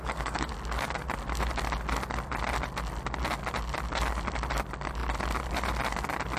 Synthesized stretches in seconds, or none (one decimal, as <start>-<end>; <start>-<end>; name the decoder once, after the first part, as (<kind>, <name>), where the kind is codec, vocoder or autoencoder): 0.0-0.5 (codec, DAC)